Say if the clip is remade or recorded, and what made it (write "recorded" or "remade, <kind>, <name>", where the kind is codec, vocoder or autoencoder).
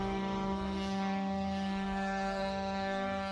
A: remade, codec, SNAC